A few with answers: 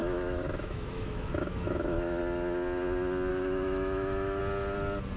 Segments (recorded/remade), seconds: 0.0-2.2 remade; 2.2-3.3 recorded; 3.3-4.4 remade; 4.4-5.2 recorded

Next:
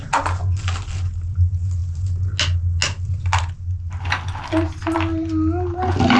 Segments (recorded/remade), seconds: 0.0-6.2 recorded

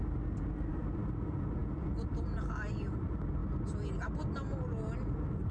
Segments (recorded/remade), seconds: 0.0-5.5 recorded